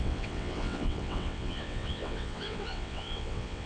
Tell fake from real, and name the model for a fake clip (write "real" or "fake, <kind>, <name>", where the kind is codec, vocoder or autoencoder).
fake, vocoder, WaveNeXt